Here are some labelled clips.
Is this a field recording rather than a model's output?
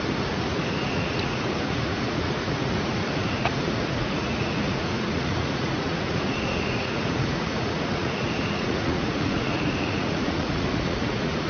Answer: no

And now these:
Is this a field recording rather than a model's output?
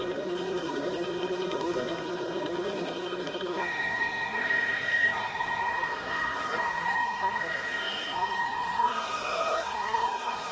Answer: no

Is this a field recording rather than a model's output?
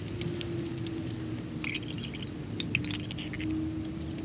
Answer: yes